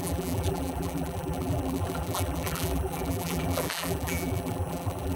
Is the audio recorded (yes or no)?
no